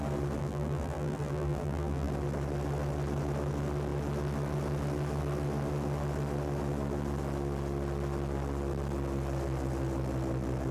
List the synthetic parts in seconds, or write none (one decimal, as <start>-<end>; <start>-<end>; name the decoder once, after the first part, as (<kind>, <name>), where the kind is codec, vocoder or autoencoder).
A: 0.4-2.1 (vocoder, BigVGAN v2)